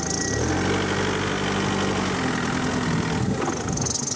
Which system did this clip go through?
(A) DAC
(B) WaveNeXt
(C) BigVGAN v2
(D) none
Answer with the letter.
D